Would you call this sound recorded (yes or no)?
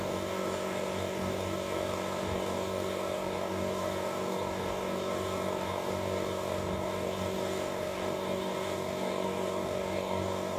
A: no